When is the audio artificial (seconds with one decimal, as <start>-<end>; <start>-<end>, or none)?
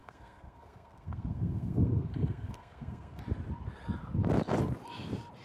0.0-3.2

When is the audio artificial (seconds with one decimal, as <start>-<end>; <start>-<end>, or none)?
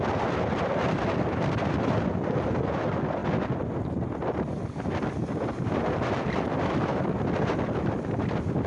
none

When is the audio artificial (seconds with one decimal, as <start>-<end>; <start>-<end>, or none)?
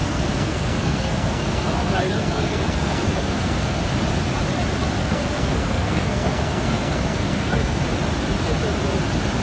0.0-3.8; 5.0-7.8